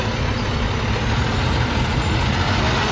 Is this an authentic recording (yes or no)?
yes